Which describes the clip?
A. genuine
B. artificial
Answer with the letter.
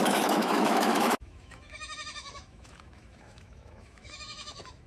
B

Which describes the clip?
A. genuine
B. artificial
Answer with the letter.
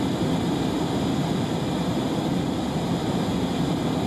A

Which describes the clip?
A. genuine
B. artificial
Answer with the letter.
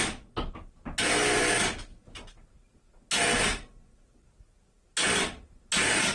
A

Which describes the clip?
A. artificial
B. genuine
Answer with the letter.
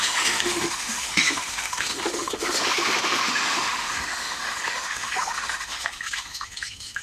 A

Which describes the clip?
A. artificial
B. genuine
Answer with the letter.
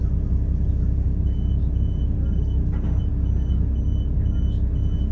B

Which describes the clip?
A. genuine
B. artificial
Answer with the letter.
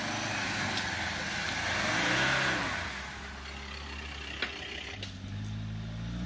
A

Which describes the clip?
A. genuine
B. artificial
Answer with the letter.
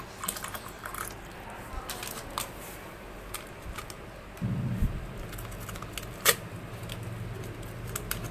A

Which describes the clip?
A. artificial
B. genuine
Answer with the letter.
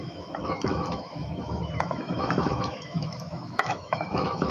A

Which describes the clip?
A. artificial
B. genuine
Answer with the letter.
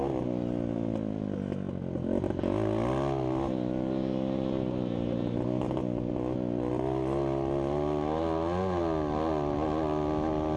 B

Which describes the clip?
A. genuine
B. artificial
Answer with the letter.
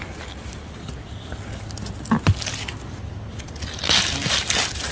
A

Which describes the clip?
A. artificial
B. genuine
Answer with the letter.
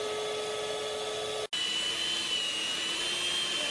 B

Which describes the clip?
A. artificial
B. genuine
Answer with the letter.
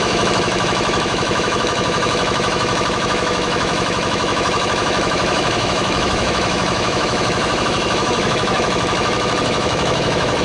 A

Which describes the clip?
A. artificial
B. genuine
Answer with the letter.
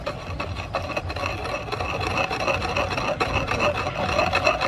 B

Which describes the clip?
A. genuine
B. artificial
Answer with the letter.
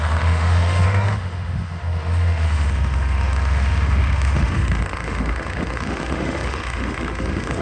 B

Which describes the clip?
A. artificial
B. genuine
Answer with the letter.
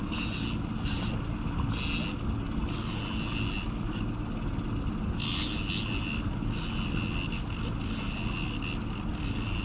B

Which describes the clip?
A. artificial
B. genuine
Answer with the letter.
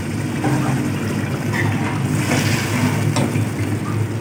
B